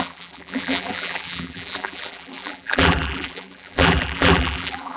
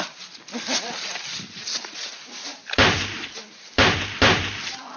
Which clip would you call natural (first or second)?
second